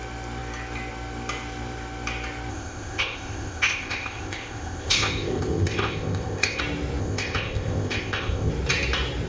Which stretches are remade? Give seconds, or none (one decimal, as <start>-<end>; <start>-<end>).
2.5-6.6; 7.0-8.5